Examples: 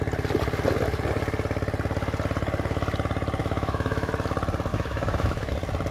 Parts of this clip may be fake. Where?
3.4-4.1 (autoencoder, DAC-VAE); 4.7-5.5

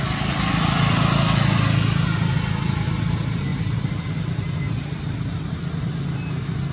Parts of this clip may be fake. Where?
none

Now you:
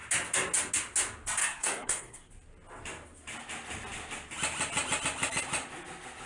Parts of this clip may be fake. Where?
1.4-2.3 (codec, SNAC)

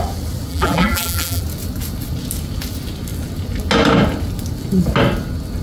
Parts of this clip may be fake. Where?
0.5-1.4 (vocoder, BigVGAN v2)

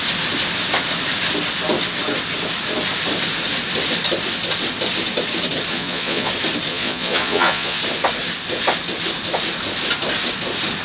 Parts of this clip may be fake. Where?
5.7-6.3 (vocoder, Vocos); 6.7-7.8